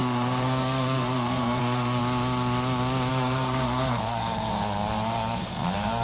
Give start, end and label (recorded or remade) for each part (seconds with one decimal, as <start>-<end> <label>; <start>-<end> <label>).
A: 0.0-2.0 remade; 2.0-3.1 recorded; 3.1-6.0 remade